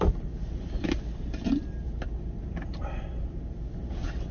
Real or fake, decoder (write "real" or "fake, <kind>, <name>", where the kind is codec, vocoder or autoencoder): real